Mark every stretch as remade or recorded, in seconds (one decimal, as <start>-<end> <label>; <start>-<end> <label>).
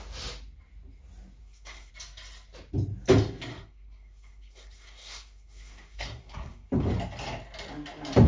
0.0-1.4 recorded; 1.4-1.9 remade; 1.9-3.5 recorded; 3.5-6.7 remade; 6.7-8.3 recorded